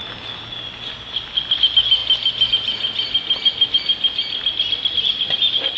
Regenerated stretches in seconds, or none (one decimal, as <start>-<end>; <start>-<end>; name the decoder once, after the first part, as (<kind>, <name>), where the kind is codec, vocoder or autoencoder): none